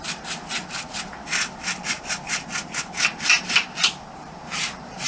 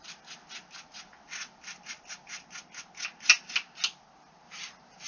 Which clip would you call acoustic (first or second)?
second